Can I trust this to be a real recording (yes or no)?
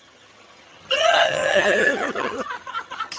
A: no